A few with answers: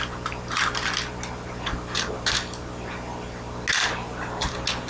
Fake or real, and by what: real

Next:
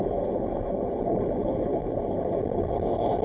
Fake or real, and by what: fake, codec, HILCodec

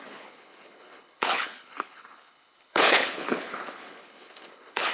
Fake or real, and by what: fake, codec, HILCodec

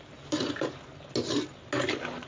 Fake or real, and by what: real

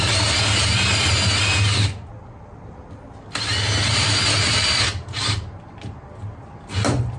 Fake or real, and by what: real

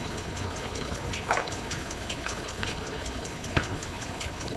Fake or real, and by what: fake, codec, HILCodec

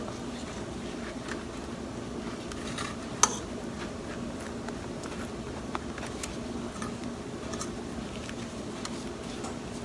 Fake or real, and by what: real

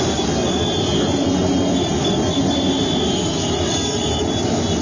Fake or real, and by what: real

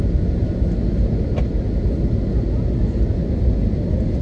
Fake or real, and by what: real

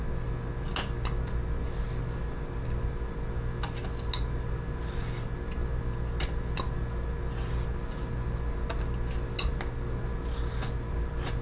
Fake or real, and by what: real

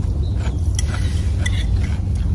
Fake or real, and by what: real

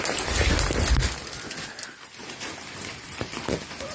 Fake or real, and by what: real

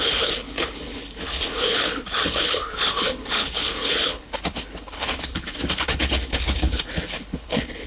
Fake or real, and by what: fake, codec, HILCodec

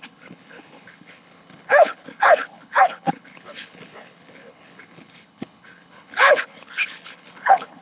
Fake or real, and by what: fake, codec, HILCodec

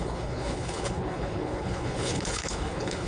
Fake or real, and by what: fake, codec, HILCodec